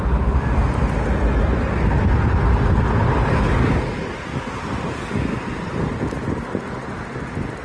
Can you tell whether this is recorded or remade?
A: recorded